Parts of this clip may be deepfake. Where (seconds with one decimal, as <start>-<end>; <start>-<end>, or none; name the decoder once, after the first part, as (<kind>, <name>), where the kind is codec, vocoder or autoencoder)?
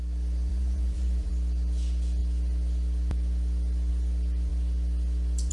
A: 0.5-1.3 (vocoder, BigVGAN v2)